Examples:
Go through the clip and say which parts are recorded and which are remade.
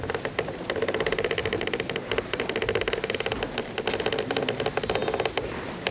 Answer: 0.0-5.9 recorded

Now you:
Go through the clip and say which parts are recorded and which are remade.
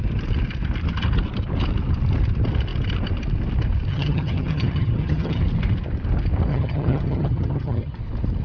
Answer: 0.0-3.9 recorded; 3.9-5.4 remade; 5.4-6.5 recorded; 6.5-8.0 remade; 8.0-8.4 recorded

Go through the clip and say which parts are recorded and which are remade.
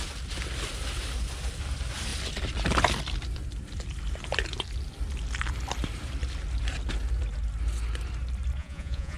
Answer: 0.0-8.6 recorded; 8.6-9.2 remade